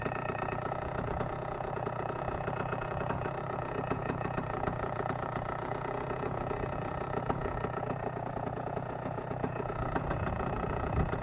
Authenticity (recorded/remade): remade